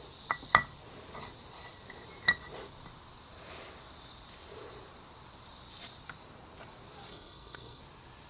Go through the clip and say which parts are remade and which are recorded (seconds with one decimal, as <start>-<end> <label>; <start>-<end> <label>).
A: 0.0-7.1 recorded; 7.1-7.8 remade; 7.8-8.3 recorded